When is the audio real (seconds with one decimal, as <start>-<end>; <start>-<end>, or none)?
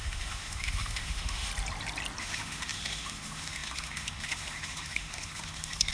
1.5-2.2